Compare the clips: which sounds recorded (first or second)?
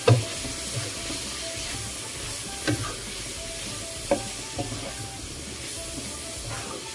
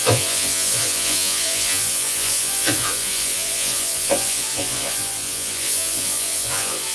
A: first